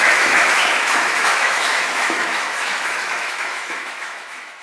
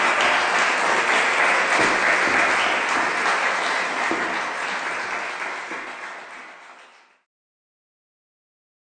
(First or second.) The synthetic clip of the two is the first